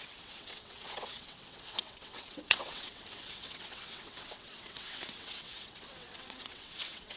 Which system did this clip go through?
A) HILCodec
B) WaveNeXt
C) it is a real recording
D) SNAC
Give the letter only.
B